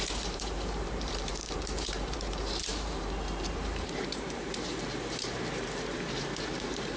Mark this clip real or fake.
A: fake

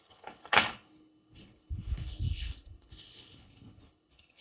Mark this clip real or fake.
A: fake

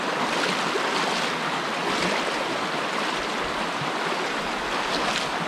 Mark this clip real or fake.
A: real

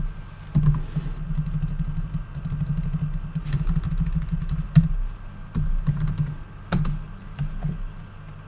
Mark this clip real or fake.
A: real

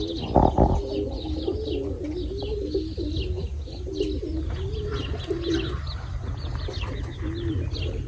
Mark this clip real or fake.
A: real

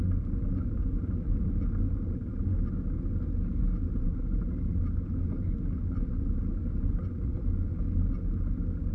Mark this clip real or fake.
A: real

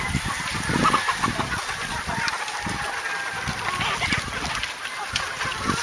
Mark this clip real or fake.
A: real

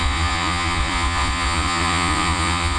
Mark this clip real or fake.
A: fake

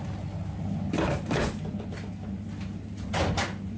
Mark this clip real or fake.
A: real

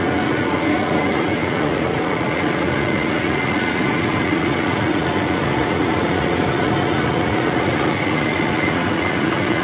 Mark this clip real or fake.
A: fake